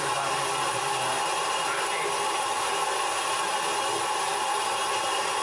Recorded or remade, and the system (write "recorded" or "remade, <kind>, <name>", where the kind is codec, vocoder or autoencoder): recorded